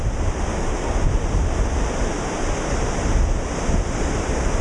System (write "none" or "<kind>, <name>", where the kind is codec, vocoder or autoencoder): none